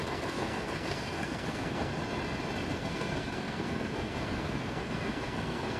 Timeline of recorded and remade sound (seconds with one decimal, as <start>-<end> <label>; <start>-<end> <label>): 0.0-1.9 remade; 1.9-2.7 recorded; 2.7-5.8 remade